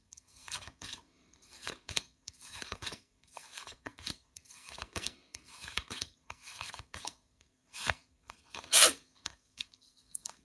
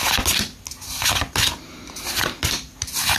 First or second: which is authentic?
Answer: second